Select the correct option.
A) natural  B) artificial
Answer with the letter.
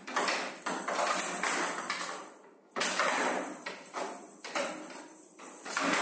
B